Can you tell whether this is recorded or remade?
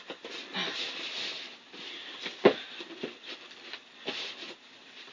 recorded